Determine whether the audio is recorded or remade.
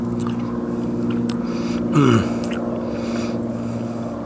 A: recorded